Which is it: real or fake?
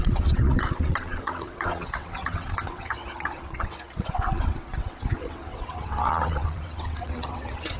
fake